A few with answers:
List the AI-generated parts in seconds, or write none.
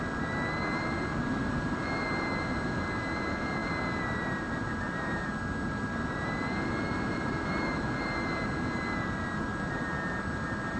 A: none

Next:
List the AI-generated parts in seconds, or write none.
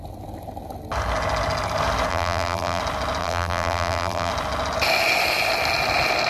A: 2.1-2.8 (vocoder, BigVGAN v2); 3.2-4.3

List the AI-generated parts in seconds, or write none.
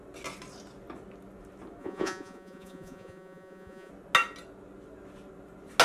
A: 1.8-3.9 (vocoder, Vocos)